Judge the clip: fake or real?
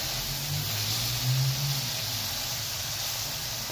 real